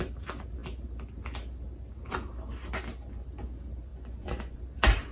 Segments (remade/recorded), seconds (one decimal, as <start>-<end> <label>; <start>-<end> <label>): 0.0-3.9 recorded; 3.9-4.6 remade; 4.6-5.1 recorded